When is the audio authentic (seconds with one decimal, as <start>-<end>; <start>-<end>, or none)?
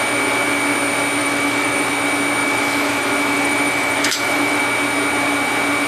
0.0-1.2; 1.9-2.4; 4.6-5.9